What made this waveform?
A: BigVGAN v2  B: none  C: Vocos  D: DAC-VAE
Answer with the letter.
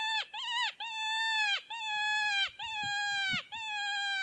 B